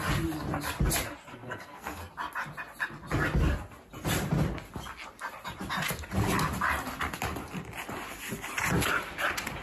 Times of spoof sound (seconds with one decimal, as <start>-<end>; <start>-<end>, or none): 1.3-2.1